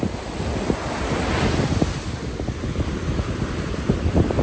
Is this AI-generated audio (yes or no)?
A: no